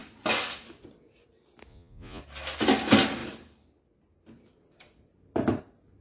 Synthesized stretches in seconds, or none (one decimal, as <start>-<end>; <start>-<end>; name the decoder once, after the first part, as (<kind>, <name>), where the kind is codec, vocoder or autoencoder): 1.7-2.2 (vocoder, Vocos)